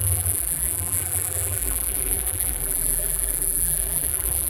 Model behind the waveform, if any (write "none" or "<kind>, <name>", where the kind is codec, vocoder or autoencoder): vocoder, BigVGAN v2